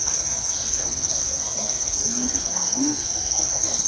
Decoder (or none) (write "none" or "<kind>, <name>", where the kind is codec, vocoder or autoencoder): codec, SNAC